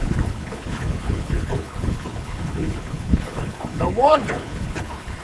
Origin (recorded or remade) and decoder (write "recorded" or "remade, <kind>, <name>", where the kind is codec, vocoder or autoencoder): remade, codec, HILCodec